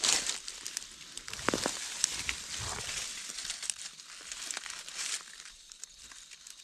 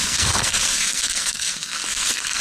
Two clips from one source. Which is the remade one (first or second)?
second